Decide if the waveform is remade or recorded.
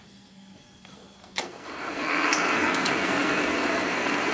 remade